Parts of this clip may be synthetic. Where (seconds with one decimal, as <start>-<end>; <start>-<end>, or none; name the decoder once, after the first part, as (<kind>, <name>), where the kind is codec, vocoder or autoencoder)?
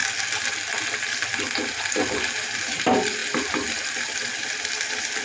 none